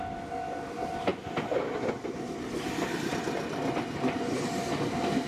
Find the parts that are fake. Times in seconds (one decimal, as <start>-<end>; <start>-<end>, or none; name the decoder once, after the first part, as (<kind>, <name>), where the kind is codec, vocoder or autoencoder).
none